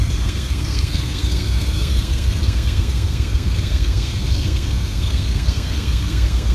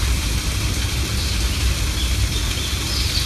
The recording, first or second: second